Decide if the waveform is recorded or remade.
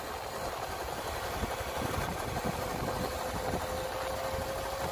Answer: recorded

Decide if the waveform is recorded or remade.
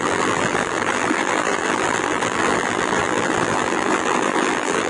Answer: remade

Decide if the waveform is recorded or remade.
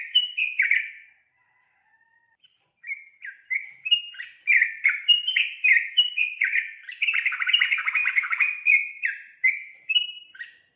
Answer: remade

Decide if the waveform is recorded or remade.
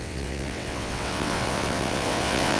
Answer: remade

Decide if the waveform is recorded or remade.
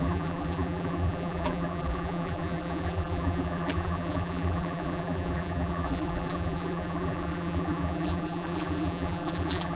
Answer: remade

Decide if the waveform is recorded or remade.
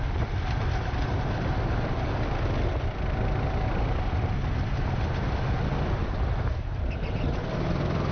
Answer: recorded